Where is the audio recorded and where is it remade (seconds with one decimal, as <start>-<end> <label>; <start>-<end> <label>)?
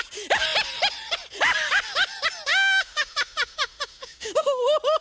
0.0-2.5 recorded; 2.5-4.6 remade; 4.6-5.0 recorded